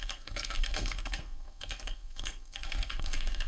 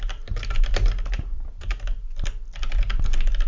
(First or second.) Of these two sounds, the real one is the second